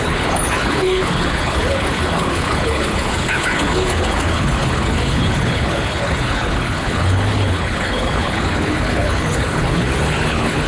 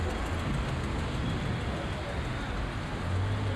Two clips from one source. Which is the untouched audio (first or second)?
second